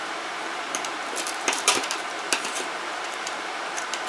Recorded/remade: remade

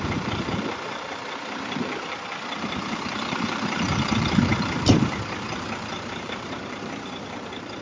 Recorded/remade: remade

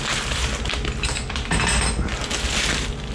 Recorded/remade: recorded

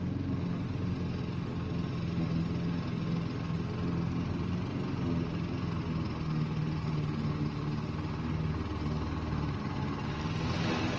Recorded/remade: recorded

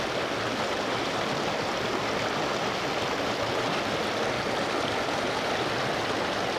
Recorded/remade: recorded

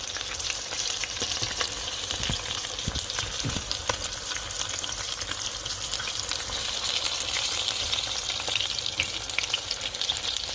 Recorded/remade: remade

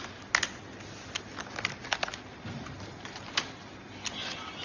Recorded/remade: recorded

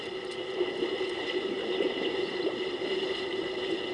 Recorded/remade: recorded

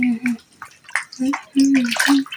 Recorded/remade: recorded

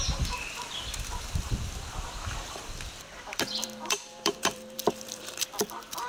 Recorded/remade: remade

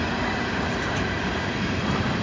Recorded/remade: remade